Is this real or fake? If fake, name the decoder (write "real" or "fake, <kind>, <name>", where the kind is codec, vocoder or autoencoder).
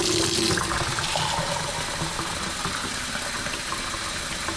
real